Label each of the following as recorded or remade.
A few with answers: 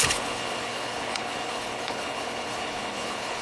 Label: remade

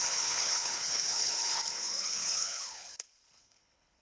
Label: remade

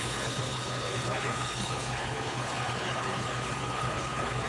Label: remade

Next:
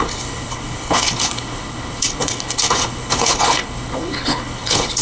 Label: remade